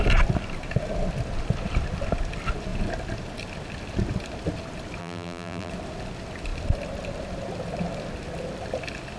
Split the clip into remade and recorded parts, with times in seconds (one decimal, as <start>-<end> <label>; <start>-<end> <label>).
0.0-5.0 recorded; 5.0-5.7 remade; 5.7-9.2 recorded